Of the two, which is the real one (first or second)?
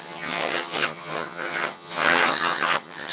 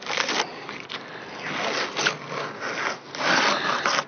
second